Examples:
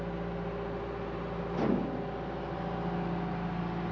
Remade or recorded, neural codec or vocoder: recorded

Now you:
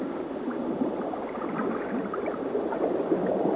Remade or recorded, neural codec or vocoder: recorded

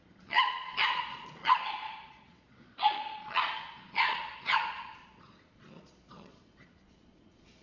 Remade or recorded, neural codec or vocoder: remade, vocoder, Vocos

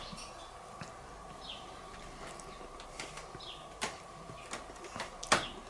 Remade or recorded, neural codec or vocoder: recorded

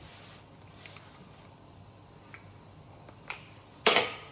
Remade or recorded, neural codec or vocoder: recorded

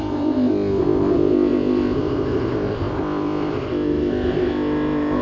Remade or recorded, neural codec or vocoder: remade, codec, ZipCodec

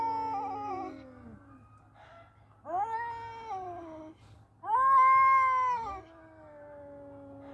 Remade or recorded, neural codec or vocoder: recorded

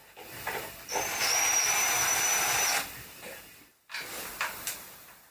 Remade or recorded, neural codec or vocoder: recorded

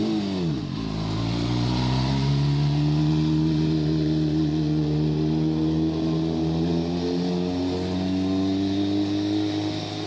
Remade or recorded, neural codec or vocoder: recorded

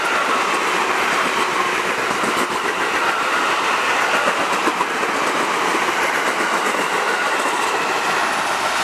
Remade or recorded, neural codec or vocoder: recorded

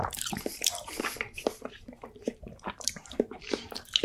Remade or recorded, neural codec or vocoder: remade, vocoder, BigVGAN v2